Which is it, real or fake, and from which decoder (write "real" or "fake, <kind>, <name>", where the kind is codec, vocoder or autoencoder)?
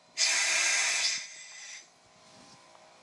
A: real